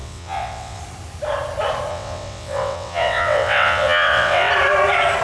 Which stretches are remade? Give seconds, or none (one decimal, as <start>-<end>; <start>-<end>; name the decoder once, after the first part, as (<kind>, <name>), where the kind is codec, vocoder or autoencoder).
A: 0.0-0.8 (vocoder, WaveNeXt); 1.9-4.5